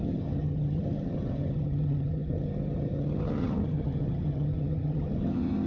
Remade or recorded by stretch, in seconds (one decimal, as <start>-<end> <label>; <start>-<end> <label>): 0.0-5.7 remade